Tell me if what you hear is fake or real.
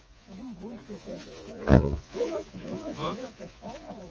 fake